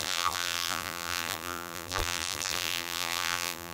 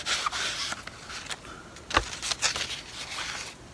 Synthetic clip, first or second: first